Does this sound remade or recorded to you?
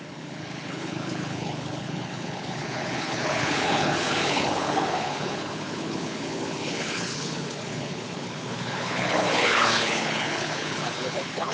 remade